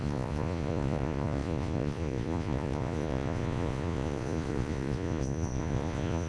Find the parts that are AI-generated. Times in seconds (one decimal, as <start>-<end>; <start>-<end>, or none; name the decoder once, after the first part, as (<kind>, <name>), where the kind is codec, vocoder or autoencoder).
0.0-6.3 (vocoder, Vocos)